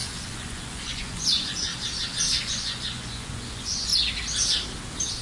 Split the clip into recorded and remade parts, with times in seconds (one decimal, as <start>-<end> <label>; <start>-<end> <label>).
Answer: 0.0-1.7 remade; 1.7-2.4 recorded; 2.4-3.9 remade; 3.9-5.2 recorded